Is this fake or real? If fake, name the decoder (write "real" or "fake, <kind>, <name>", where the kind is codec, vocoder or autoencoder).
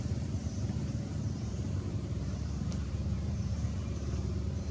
fake, vocoder, BigVGAN v2